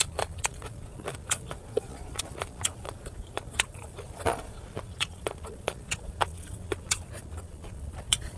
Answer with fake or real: fake